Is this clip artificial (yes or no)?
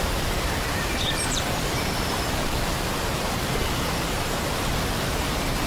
yes